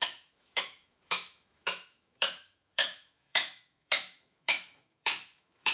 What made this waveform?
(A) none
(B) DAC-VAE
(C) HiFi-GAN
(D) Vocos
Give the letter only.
B